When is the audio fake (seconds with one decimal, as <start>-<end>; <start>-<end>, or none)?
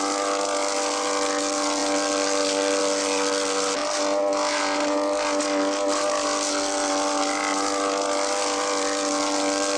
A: none